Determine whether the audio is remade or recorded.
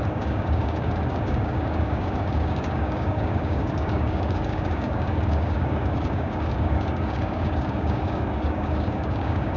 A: remade